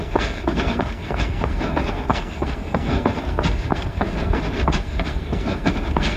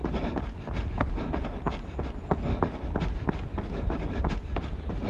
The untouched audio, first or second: second